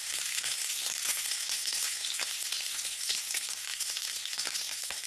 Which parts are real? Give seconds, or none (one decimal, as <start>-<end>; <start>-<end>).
none